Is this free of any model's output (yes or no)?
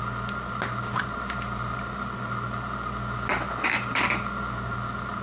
yes